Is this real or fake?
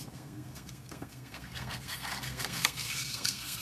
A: fake